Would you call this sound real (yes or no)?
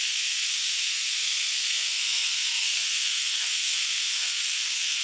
no